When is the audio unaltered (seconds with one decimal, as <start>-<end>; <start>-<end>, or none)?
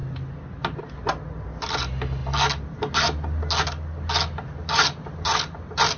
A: 0.0-6.0